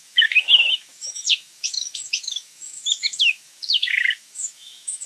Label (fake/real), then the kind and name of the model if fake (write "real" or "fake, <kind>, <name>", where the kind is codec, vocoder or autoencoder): fake, autoencoder, DAC-VAE